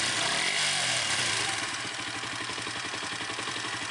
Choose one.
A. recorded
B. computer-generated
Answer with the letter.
B